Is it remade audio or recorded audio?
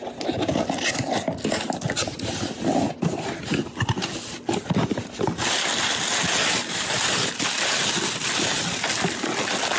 recorded